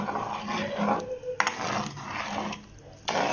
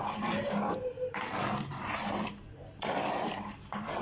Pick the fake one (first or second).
second